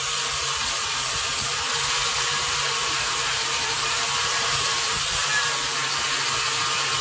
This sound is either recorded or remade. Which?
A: remade